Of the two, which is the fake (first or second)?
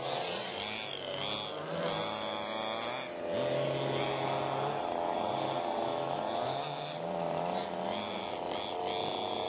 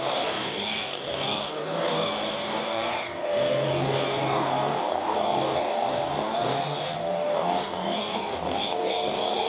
second